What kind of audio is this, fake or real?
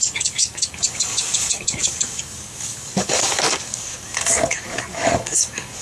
fake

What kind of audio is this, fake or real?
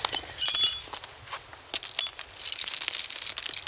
real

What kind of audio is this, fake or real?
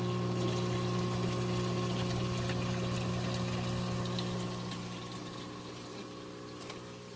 real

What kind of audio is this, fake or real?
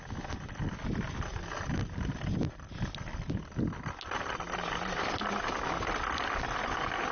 real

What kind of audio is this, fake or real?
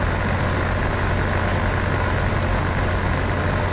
real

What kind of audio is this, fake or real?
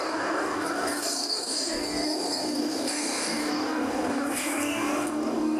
fake